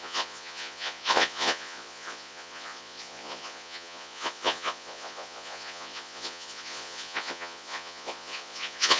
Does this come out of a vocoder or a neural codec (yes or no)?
yes